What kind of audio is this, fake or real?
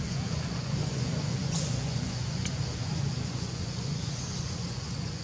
fake